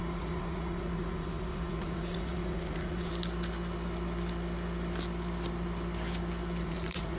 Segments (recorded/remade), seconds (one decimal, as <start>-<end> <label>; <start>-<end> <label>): 0.0-3.1 remade; 3.1-6.6 recorded; 6.6-7.2 remade